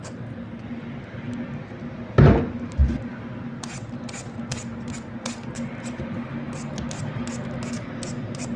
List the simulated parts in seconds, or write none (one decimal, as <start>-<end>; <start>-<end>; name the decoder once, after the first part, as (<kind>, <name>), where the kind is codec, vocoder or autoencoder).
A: none

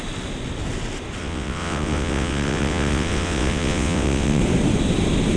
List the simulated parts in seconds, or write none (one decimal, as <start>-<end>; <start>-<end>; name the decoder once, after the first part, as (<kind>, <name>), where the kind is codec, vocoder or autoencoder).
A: 1.2-4.4 (vocoder, WaveNeXt)

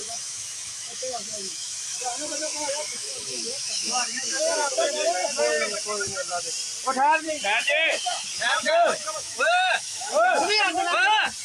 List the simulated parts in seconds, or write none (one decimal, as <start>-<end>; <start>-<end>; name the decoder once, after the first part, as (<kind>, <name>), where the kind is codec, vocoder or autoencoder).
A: 0.0-2.0 (autoencoder, DAC-VAE); 2.4-4.7; 7.6-10.6

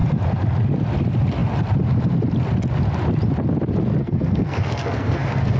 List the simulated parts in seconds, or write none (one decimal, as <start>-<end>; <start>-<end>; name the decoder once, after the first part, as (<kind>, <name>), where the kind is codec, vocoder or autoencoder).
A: 4.0-5.6 (codec, SNAC)